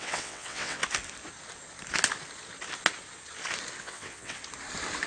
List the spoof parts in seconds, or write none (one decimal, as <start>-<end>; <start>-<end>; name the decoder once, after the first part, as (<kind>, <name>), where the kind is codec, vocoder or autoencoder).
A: 0.0-0.8 (vocoder, WaveNeXt); 3.8-4.4